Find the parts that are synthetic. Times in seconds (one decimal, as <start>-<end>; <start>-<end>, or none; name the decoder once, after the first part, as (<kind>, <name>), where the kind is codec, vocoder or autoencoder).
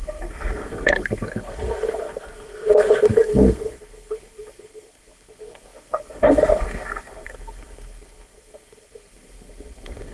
0.0-10.1 (codec, SNAC)